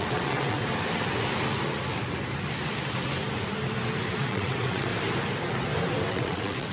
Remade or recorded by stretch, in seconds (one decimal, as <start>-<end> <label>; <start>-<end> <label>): 0.0-0.6 remade; 0.6-4.1 recorded; 4.1-4.9 remade; 4.9-6.1 recorded; 6.1-6.7 remade